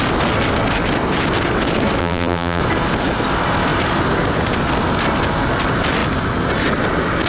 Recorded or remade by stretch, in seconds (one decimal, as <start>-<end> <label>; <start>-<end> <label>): 0.0-2.0 recorded; 2.0-2.6 remade; 2.6-7.3 recorded

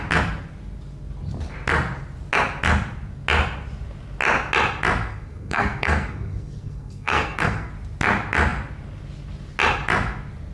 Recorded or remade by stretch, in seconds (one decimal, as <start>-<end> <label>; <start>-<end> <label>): 0.0-5.1 recorded; 5.1-7.7 remade; 7.7-10.5 recorded

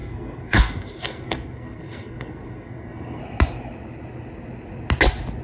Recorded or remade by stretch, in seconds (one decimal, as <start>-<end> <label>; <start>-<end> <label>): 0.0-3.2 remade; 3.2-5.4 recorded

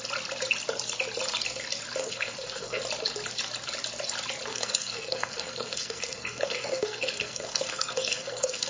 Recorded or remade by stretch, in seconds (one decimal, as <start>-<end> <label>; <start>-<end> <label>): 0.0-2.0 recorded; 2.0-2.8 remade; 2.8-4.5 recorded; 4.5-8.7 remade

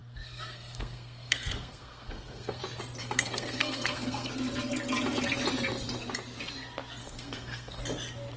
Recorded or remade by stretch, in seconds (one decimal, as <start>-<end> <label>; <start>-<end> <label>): 0.0-2.6 remade; 2.6-3.0 recorded; 3.0-4.3 remade; 4.3-7.0 recorded; 7.0-7.8 remade; 7.8-8.4 recorded